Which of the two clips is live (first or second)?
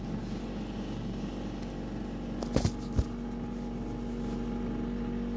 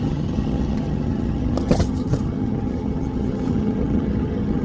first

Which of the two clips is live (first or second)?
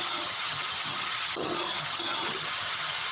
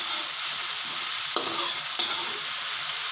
second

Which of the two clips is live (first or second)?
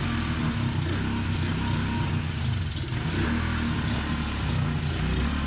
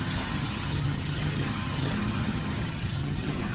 first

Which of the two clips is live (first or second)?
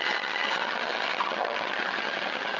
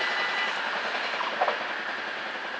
second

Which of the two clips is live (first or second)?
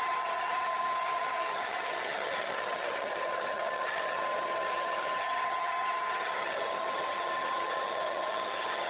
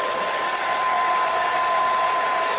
second